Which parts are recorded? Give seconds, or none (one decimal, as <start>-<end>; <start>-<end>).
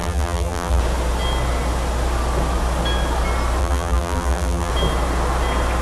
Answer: 0.8-3.6; 4.7-5.8